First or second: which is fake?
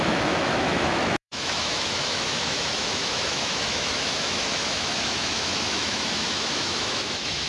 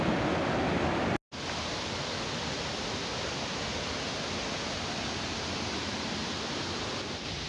first